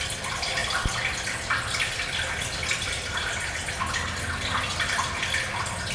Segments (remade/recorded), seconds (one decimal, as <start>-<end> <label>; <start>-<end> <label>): 0.0-5.9 recorded